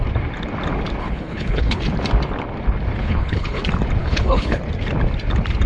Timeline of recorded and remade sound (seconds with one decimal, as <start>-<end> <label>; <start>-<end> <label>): 0.0-1.0 recorded; 1.0-1.8 remade; 1.8-3.0 recorded; 3.0-3.6 remade; 3.6-4.0 recorded; 4.0-4.6 remade; 4.6-5.7 recorded